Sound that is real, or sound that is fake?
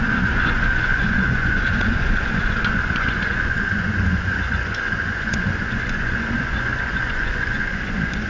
fake